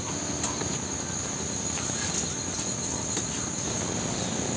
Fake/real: real